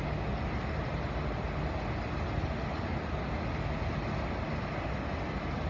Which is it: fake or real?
real